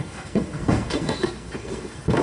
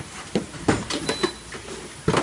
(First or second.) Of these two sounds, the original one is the second